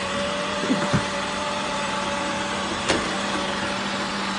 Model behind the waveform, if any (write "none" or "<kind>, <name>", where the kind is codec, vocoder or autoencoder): vocoder, BigVGAN v2